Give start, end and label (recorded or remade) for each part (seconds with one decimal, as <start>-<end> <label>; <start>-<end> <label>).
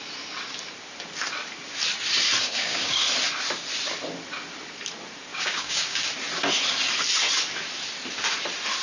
0.0-2.4 recorded; 2.4-3.0 remade; 3.0-5.3 recorded; 5.3-6.0 remade; 6.0-8.8 recorded